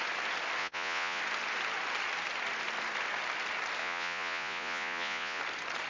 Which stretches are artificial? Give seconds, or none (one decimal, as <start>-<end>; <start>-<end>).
0.6-1.2; 3.8-5.4